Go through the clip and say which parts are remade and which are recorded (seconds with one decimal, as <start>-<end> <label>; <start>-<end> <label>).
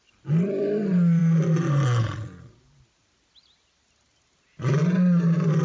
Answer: 0.0-5.6 recorded